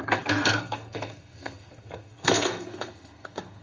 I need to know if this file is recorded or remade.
remade